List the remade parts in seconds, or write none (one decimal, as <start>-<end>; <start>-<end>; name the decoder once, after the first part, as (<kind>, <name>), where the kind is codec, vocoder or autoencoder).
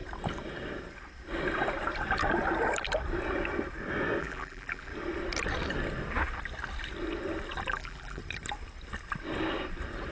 4.2-4.9 (vocoder, BigVGAN v2); 7.7-8.2